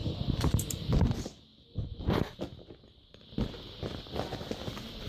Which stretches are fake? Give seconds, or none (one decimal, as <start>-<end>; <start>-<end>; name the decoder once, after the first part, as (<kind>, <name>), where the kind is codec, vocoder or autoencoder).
0.0-0.9 (vocoder, BigVGAN v2); 1.5-3.8